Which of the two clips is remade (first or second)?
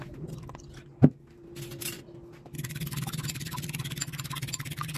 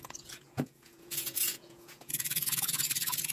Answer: second